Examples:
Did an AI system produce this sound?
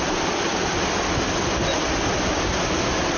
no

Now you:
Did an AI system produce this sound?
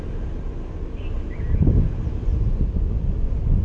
no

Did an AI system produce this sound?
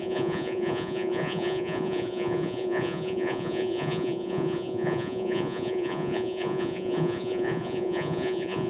yes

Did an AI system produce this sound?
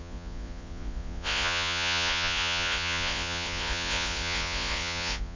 yes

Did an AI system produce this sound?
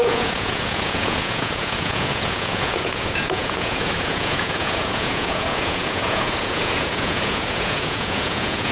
yes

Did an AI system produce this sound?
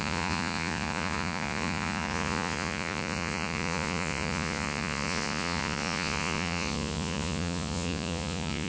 yes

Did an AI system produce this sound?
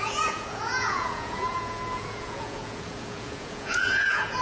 yes